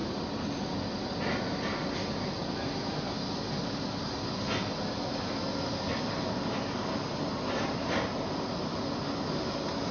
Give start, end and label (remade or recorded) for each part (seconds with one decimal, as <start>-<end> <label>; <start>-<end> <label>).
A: 0.0-9.9 recorded